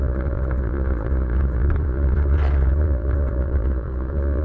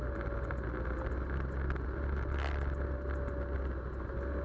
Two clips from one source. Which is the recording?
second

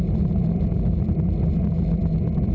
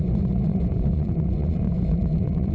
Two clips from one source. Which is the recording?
first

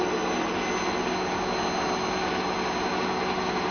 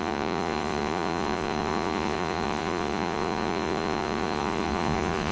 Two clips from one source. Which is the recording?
first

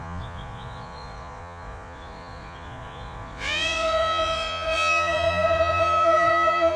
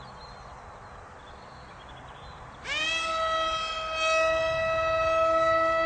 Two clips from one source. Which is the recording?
second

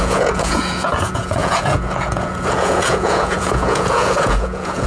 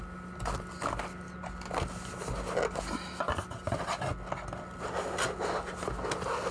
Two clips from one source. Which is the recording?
second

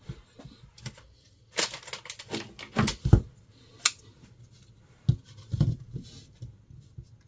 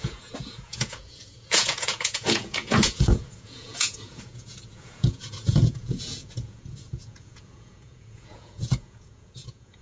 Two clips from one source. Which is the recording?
first